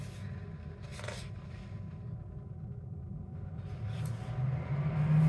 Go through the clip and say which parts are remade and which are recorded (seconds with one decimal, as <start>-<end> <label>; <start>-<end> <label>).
0.0-5.3 recorded